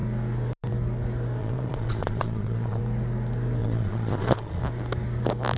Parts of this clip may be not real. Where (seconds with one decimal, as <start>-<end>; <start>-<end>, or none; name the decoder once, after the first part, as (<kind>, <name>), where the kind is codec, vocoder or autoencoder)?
1.4-2.8 (vocoder, Vocos); 3.6-4.6